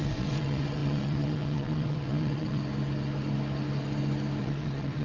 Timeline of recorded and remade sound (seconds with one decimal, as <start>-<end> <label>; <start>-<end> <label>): 0.0-2.6 remade; 2.6-4.4 recorded; 4.4-5.0 remade